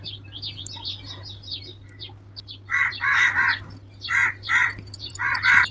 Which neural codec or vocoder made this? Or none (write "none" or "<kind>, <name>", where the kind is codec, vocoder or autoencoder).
none